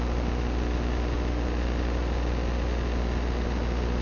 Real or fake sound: real